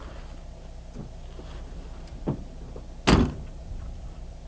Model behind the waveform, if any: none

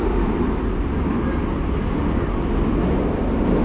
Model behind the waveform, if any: none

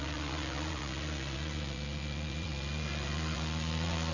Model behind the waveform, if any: vocoder, Vocos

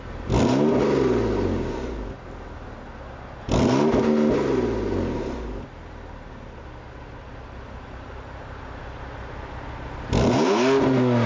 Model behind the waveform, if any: none